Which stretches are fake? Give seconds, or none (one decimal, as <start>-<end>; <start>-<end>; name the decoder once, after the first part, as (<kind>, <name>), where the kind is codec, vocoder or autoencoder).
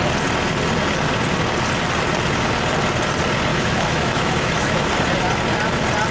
3.5-4.9 (autoencoder, DAC-VAE)